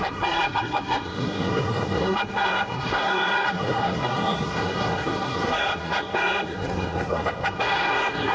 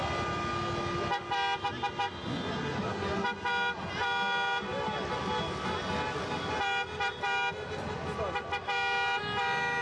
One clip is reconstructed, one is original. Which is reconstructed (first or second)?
first